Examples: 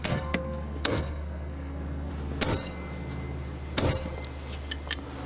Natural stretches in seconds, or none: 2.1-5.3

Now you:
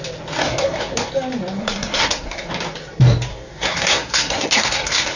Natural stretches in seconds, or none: 0.0-0.4; 1.1-1.6; 2.5-3.3

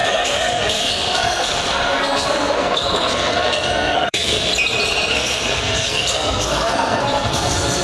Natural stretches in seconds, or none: 4.5-5.1